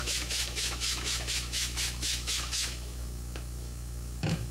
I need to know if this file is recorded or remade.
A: remade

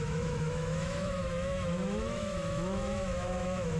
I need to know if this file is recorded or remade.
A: remade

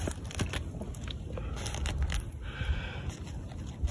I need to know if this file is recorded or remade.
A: recorded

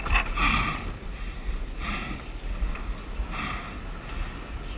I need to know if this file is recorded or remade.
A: recorded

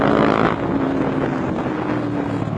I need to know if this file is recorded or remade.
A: recorded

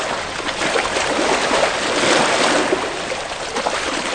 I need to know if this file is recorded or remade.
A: recorded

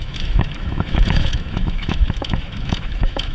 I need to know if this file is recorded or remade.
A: remade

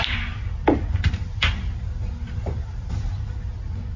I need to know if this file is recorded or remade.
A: recorded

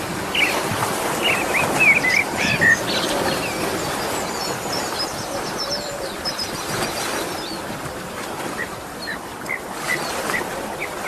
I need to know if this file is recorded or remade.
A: recorded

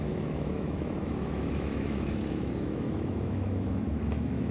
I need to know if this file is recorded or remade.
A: remade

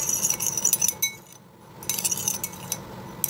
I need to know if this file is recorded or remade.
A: recorded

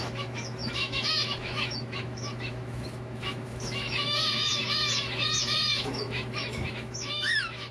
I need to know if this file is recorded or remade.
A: remade